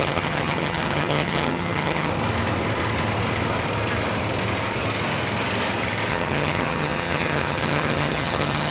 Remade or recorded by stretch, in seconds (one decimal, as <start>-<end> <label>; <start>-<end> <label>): 0.0-2.1 remade; 2.1-6.1 recorded; 6.1-8.7 remade